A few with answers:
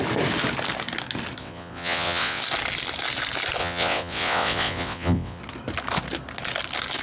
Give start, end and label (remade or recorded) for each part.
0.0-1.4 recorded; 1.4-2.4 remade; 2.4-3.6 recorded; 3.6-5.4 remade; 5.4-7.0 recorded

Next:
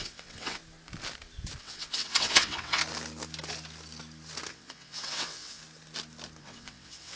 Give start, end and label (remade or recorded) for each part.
0.0-0.6 remade; 0.6-1.6 recorded; 1.6-2.8 remade; 2.8-4.5 recorded; 4.5-5.6 remade; 5.6-6.4 recorded; 6.4-7.2 remade

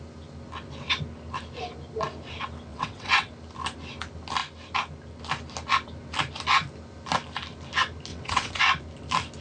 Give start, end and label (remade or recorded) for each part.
0.0-2.7 recorded; 2.7-3.3 remade; 3.3-8.1 recorded; 8.1-8.6 remade; 8.6-9.4 recorded

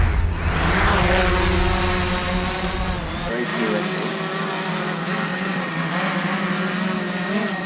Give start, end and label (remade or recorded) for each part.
0.0-5.3 recorded; 5.3-5.9 remade; 5.9-7.7 recorded